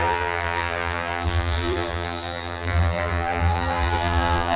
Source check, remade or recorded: remade